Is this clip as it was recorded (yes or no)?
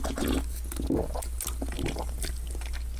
yes